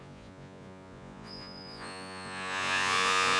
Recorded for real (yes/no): no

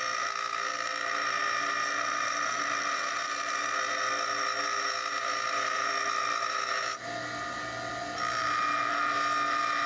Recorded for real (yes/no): yes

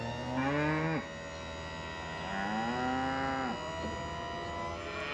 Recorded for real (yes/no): yes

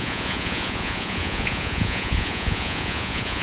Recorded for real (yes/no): no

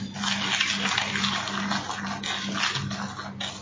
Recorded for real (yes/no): yes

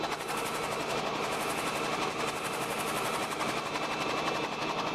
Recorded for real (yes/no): yes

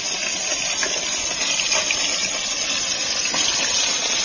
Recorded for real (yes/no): yes